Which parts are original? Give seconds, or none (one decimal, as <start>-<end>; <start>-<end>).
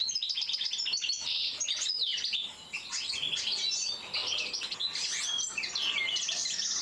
0.0-6.8